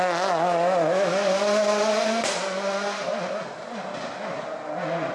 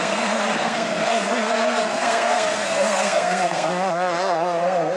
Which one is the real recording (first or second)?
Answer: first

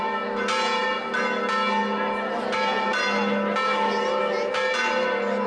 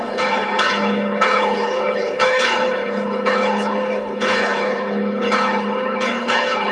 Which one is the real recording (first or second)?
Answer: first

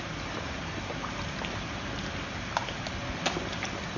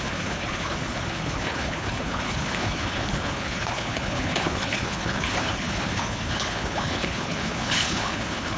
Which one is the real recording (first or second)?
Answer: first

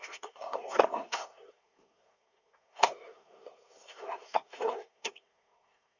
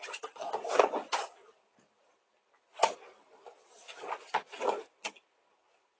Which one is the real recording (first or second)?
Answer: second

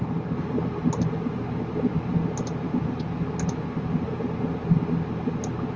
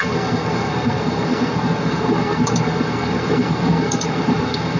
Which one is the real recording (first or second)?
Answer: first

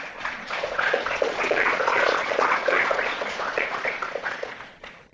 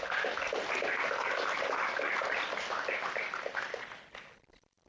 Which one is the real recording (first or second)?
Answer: second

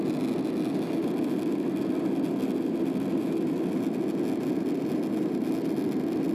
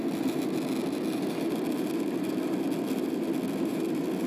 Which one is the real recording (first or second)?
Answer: first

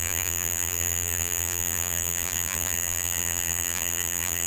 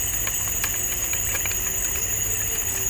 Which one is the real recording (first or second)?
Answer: second